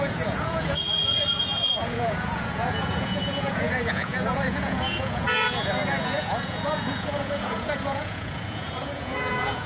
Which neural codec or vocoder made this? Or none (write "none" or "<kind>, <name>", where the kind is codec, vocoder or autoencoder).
vocoder, Vocos